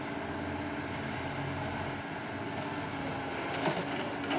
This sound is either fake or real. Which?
real